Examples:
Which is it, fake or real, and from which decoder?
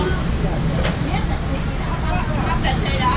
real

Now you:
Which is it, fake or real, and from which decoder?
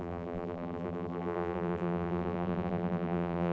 fake, vocoder, BigVGAN v2